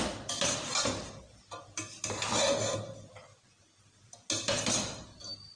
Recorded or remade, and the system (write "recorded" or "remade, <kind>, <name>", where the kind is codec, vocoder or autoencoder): recorded